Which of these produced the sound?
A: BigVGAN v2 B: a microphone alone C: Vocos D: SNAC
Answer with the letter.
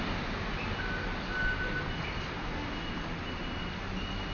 B